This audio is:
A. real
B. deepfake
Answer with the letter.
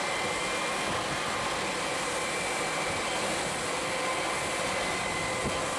A